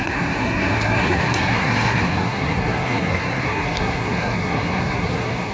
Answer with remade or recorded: remade